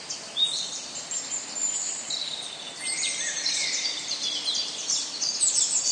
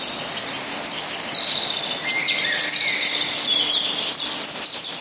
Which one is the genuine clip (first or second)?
second